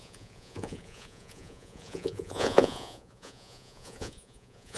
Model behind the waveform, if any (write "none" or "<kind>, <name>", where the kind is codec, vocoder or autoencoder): vocoder, Vocos